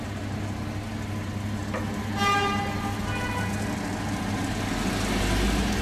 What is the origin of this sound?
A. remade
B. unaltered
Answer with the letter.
B